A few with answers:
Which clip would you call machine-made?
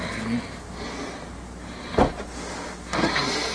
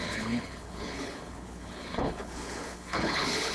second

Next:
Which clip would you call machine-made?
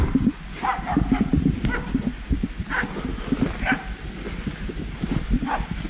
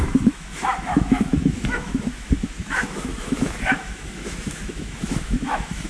second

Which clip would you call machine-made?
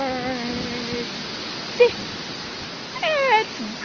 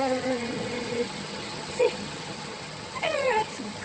second